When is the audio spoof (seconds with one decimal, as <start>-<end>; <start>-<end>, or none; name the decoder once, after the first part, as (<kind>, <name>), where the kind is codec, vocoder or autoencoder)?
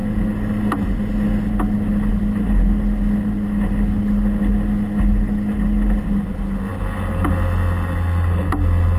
none